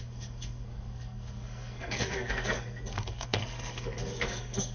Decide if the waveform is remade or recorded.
remade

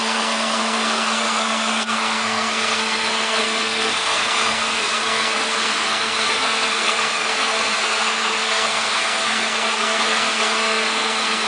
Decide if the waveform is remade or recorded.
remade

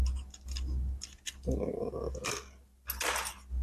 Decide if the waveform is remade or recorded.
recorded